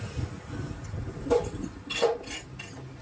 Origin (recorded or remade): recorded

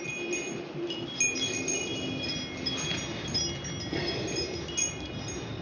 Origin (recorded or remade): recorded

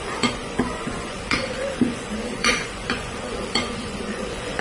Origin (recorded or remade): remade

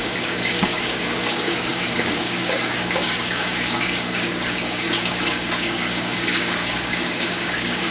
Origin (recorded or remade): remade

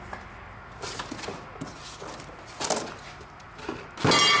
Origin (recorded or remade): recorded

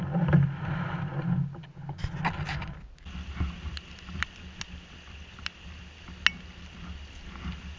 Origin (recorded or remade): recorded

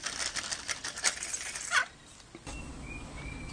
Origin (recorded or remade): recorded